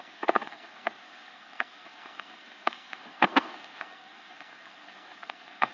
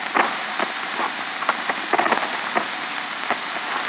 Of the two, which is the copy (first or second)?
first